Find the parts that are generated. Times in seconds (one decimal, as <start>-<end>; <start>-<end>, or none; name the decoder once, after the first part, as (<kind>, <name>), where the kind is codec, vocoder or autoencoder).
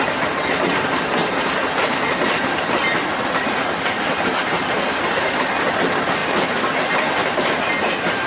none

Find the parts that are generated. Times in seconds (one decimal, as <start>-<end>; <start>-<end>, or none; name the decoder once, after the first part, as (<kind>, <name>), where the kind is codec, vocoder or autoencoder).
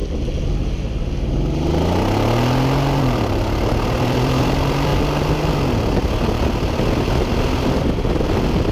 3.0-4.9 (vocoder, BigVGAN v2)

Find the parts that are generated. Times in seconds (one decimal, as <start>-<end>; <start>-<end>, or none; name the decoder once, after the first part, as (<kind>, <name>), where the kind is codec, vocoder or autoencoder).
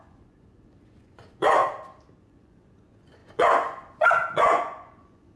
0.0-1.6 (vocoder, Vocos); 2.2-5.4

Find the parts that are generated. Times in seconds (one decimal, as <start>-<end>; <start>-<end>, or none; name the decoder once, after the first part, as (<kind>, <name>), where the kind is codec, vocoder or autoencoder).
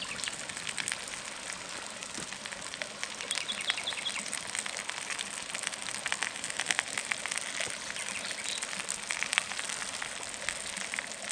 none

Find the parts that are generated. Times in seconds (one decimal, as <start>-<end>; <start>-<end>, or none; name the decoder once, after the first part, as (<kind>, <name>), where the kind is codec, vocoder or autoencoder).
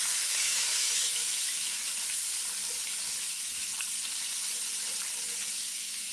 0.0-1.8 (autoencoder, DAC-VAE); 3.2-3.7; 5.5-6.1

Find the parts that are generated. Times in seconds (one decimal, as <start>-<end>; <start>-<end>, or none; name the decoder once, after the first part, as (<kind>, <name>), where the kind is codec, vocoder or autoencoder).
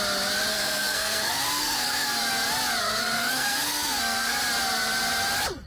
0.5-2.2 (codec, SNAC); 2.9-4.4